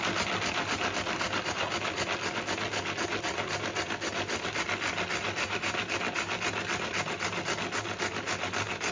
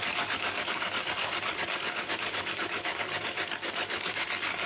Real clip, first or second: first